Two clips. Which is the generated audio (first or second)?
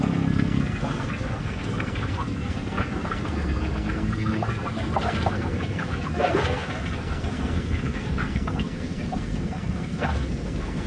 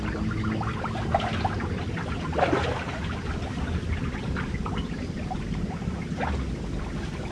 first